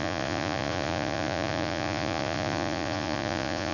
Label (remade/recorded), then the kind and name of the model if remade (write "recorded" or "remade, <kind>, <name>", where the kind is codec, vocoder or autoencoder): remade, vocoder, Vocos